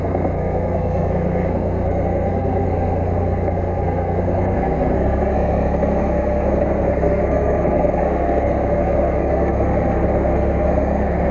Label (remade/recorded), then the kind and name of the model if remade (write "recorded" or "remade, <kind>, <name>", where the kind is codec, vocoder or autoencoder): remade, codec, SNAC